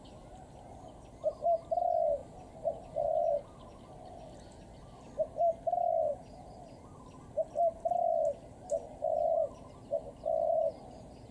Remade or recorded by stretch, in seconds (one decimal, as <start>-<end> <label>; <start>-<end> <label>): 0.0-11.3 recorded

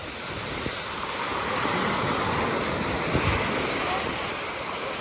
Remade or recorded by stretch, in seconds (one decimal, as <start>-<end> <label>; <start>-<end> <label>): 0.0-5.0 recorded

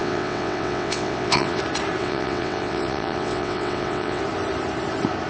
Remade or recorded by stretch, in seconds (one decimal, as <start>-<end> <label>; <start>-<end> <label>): 0.0-1.6 remade; 1.6-2.0 recorded; 2.0-4.2 remade; 4.2-5.3 recorded

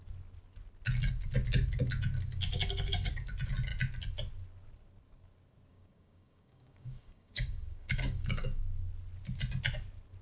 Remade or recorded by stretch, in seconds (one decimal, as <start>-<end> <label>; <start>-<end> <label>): 0.0-2.5 recorded; 2.5-3.1 remade; 3.1-5.7 recorded; 5.7-8.6 remade; 8.6-10.2 recorded

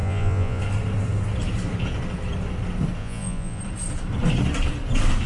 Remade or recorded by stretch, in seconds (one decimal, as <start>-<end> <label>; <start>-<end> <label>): 0.0-0.6 remade; 0.6-3.0 recorded; 3.0-3.6 remade; 3.6-5.3 recorded

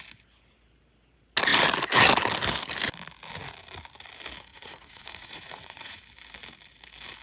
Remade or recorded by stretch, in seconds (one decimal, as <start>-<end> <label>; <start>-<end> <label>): 0.0-4.5 recorded; 4.5-6.0 remade; 6.0-7.2 recorded

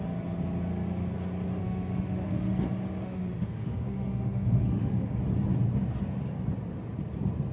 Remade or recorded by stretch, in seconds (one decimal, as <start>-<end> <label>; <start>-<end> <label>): 0.0-1.6 recorded; 1.6-2.6 remade; 2.6-3.0 recorded; 3.0-5.2 remade; 5.2-7.5 recorded

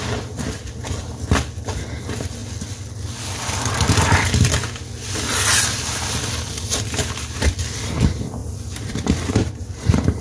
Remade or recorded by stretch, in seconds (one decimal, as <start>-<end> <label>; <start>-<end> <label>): 0.0-8.4 recorded; 8.4-10.2 remade